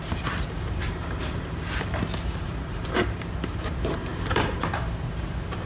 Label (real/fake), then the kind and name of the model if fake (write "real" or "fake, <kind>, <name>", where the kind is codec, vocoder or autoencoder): fake, vocoder, BigVGAN v2